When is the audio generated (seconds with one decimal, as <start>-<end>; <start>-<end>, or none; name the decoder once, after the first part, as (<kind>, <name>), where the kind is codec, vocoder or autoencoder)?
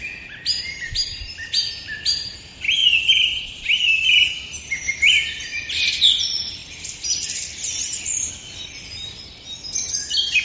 none